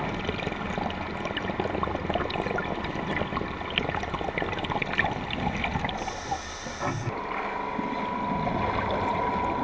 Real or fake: real